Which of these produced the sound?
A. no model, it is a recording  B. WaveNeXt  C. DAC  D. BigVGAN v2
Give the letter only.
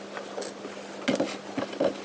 A